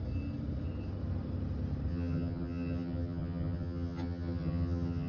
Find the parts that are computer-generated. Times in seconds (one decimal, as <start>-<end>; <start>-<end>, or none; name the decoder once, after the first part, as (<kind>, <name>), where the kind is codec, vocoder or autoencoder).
1.9-5.1 (vocoder, HiFi-GAN)